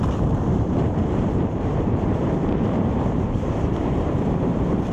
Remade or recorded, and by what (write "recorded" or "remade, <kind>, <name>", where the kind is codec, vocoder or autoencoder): remade, vocoder, BigVGAN v2